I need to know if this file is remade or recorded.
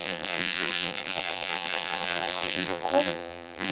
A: remade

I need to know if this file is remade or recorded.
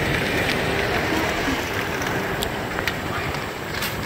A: remade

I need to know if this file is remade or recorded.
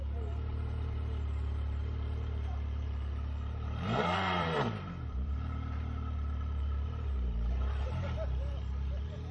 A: remade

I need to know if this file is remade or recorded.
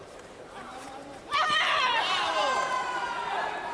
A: remade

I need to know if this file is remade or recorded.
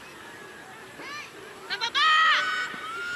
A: recorded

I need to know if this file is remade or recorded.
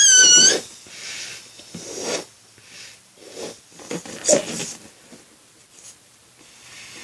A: recorded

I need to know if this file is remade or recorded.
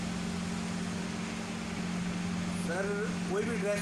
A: recorded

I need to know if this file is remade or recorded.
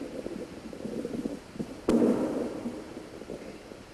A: recorded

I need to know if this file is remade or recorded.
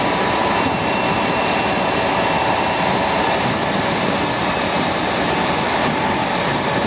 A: remade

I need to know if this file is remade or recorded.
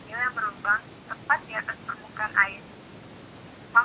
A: recorded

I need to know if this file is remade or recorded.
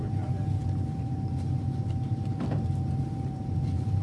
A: remade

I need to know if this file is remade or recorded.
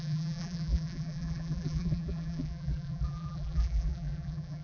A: remade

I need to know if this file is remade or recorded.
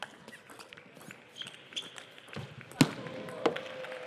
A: recorded